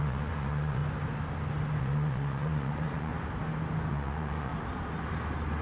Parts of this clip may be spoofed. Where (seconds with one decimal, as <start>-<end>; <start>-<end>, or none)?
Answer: 0.0-0.8; 1.8-3.1; 3.9-4.5